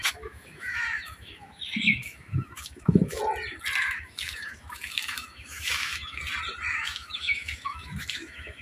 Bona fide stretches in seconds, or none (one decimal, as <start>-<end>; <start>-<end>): 3.2-3.8; 6.2-6.7